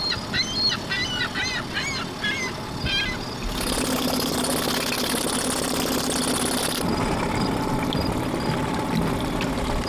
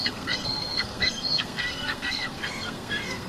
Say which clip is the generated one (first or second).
second